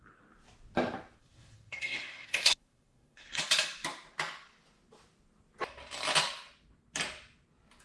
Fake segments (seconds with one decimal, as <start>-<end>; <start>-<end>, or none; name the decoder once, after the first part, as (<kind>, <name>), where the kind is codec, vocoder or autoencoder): 1.2-3.4 (codec, SNAC)